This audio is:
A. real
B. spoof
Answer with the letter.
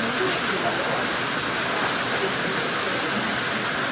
A